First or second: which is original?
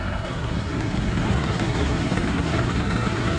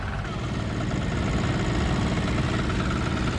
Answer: second